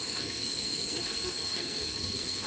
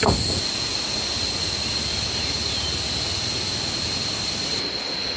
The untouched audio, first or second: second